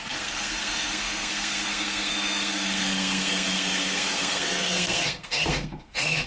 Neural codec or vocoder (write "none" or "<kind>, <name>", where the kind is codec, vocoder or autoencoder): codec, SNAC